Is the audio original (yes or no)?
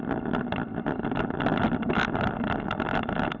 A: yes